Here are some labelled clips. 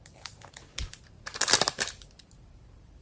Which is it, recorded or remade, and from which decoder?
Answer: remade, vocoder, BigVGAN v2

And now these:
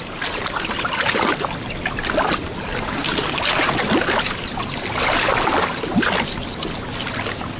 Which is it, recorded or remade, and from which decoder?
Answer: recorded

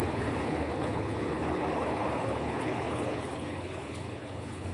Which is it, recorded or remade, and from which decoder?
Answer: remade, codec, HILCodec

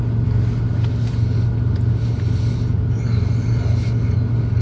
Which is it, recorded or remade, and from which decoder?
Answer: recorded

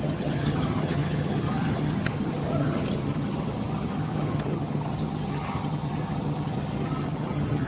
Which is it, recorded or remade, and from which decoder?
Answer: remade, vocoder, HiFi-GAN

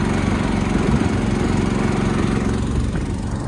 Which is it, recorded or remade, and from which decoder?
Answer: recorded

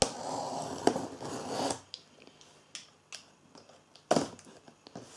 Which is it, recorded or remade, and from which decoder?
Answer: recorded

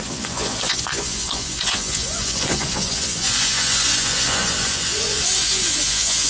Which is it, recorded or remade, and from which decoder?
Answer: remade, vocoder, Vocos